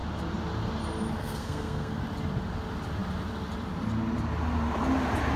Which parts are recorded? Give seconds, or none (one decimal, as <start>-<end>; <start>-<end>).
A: 0.0-1.2; 2.0-5.4